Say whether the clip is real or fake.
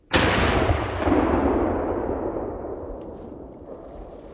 real